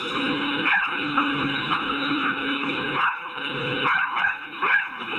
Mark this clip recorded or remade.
remade